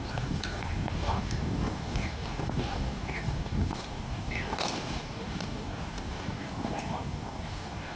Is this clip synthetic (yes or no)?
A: yes